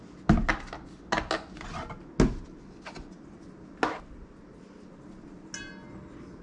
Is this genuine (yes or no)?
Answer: yes